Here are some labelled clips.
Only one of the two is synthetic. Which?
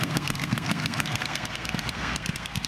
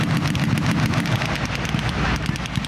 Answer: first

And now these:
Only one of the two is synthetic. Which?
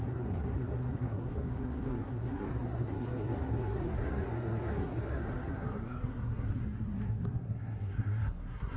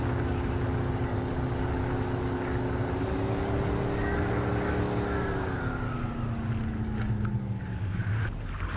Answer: first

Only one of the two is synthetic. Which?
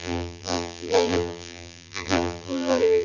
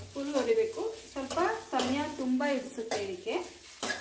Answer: first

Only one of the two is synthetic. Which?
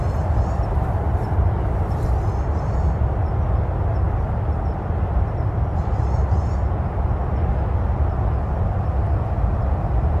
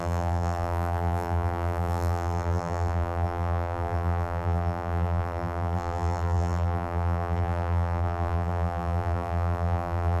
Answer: second